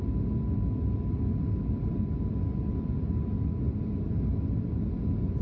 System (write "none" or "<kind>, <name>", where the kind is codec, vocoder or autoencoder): none